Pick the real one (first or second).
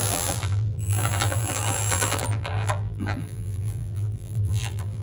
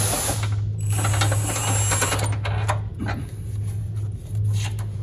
second